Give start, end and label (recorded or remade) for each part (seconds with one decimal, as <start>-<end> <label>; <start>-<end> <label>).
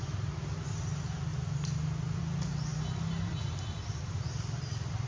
0.0-5.1 recorded